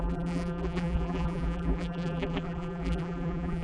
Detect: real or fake fake